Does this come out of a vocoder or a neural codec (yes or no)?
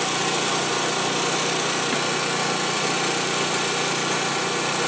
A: no